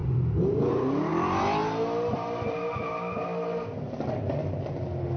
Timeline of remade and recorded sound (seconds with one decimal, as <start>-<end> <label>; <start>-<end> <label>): 0.0-0.7 remade; 0.7-5.2 recorded